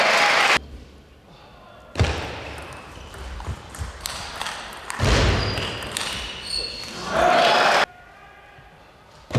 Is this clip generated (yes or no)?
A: no